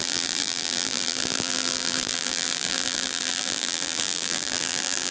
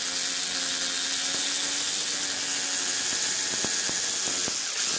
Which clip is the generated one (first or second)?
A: first